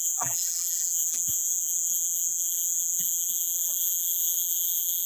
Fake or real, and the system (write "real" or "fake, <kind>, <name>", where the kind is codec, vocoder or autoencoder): fake, vocoder, BigVGAN v2